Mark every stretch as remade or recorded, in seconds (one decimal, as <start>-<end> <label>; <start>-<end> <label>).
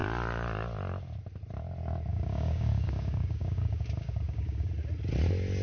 0.0-2.1 recorded; 2.1-4.7 remade; 4.7-5.6 recorded